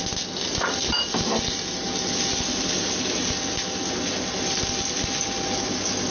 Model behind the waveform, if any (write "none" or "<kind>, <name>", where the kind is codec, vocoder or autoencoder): none